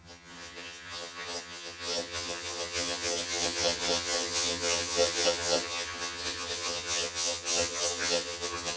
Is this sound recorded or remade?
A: remade